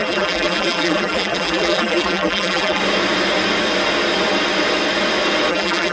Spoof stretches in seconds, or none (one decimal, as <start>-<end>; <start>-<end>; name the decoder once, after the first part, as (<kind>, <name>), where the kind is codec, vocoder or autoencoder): 0.0-2.8 (vocoder, BigVGAN v2); 5.5-5.9